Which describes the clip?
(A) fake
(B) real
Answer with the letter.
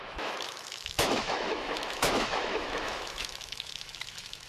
A